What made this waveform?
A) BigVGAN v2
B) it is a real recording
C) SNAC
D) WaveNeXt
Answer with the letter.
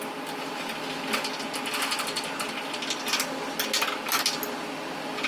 B